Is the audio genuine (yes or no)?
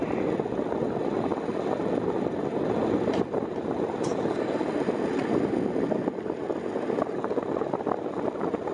yes